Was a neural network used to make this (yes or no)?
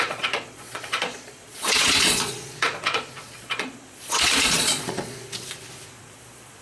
yes